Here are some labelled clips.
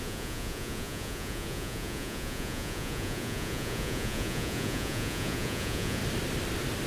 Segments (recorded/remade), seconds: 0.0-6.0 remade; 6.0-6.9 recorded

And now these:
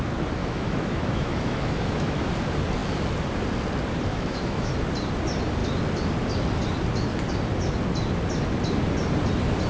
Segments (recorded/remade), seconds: 0.0-0.4 recorded; 0.4-2.3 remade; 2.3-4.1 recorded; 4.1-4.7 remade; 4.7-9.7 recorded

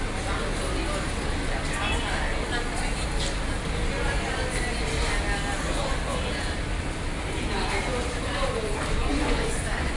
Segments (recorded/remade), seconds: 0.0-9.0 recorded; 9.0-10.0 remade

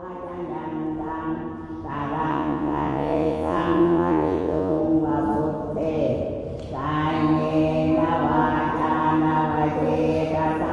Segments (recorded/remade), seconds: 0.0-2.3 recorded; 2.3-4.8 remade; 4.8-10.7 recorded

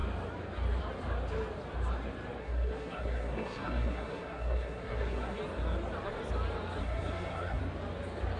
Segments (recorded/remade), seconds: 0.0-2.4 recorded; 2.4-5.4 remade; 5.4-6.8 recorded; 6.8-7.6 remade; 7.6-8.4 recorded

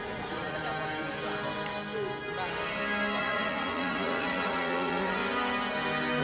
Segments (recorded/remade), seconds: 0.0-0.6 remade; 0.6-3.2 recorded; 3.2-5.2 remade; 5.2-6.2 recorded

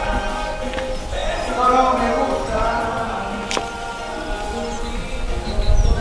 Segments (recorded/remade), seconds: 0.0-6.0 recorded